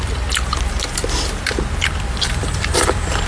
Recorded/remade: remade